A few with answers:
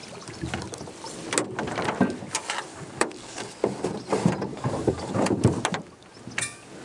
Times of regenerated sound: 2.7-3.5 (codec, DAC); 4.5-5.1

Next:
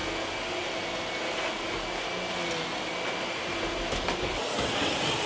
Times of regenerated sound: none

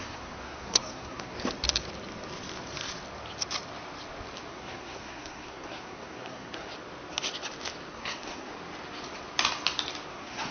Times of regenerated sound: 0.0-1.3 (codec, SNAC); 4.5-6.7; 7.9-8.5; 10.1-10.5

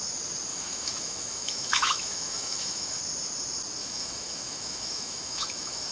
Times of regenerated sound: 0.5-3.0 (autoencoder, DAC-VAE); 3.8-5.9

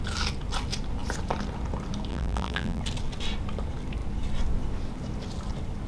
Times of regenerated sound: 2.1-2.8 (vocoder, BigVGAN v2)